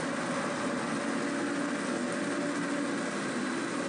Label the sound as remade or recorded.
recorded